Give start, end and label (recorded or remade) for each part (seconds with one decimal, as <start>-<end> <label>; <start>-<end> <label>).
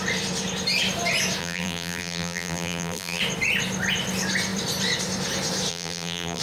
0.0-1.4 recorded; 1.4-3.2 remade; 3.2-5.7 recorded; 5.7-6.4 remade